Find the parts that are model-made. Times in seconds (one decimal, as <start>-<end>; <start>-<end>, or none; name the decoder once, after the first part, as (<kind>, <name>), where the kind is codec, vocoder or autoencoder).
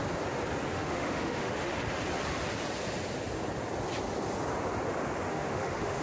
0.7-1.7 (autoencoder, DAC-VAE); 5.3-6.0